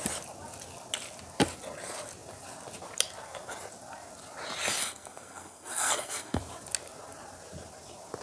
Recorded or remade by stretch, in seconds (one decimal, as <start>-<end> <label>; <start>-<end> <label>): 0.0-4.8 recorded; 4.8-6.4 remade; 6.4-8.2 recorded